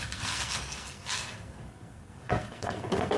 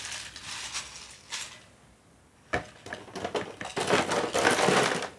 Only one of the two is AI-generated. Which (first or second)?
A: first